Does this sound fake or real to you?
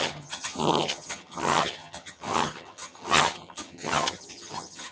fake